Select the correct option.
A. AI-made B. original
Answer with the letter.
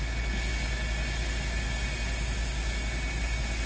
B